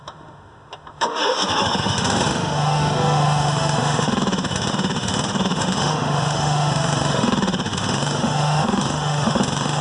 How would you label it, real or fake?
fake